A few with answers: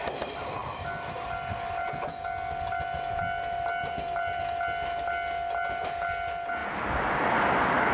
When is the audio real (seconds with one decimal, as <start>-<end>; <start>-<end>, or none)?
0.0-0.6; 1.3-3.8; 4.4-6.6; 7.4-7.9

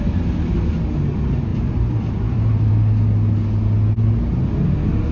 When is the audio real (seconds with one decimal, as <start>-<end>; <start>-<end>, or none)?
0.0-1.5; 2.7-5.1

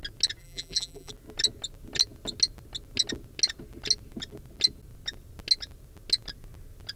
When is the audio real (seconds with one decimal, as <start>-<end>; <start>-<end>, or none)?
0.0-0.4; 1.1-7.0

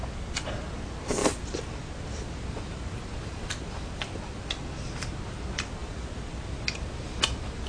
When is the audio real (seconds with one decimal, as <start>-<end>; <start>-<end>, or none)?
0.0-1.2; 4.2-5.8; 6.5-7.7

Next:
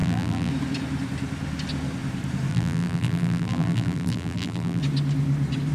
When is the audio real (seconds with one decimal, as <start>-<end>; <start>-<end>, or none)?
0.5-2.5; 4.8-5.7